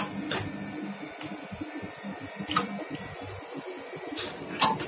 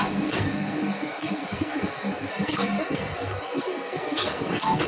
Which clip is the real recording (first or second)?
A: first